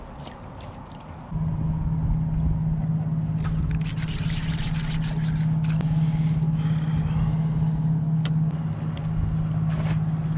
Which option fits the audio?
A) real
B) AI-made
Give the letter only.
A